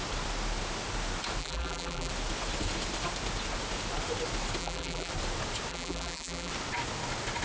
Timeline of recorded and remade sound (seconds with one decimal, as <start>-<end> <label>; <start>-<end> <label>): 0.0-1.4 recorded; 1.4-2.1 remade; 2.1-4.6 recorded; 4.6-5.1 remade; 5.1-5.7 recorded; 5.7-6.5 remade; 6.5-7.4 recorded